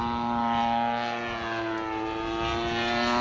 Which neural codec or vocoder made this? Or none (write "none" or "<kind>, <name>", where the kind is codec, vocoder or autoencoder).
none